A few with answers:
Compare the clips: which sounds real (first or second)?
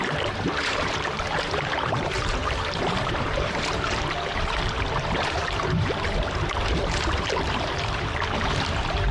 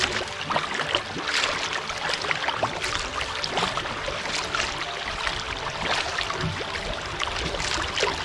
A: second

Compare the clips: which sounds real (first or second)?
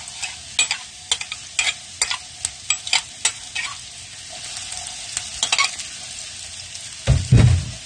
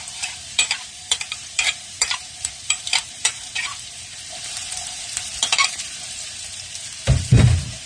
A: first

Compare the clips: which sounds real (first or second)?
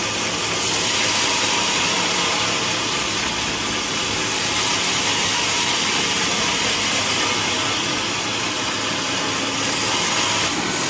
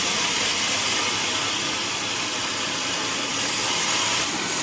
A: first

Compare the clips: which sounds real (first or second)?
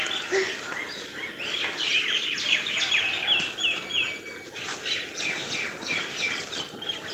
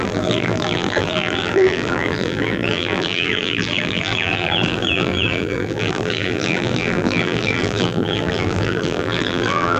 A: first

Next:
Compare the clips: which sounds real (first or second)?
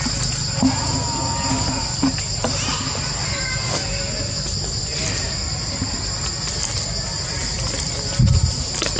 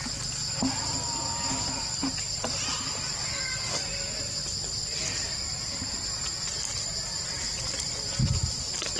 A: first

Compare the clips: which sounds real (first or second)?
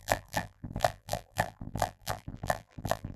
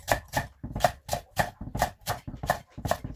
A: second